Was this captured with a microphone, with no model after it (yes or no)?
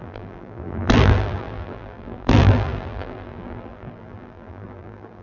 no